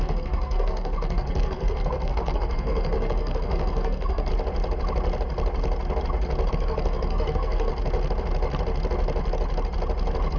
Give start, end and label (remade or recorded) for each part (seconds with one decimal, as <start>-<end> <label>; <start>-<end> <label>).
0.0-4.3 remade; 4.3-6.5 recorded; 6.5-7.7 remade; 7.7-10.4 recorded